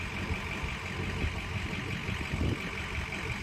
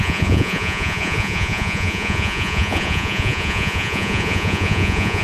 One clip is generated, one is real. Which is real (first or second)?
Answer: first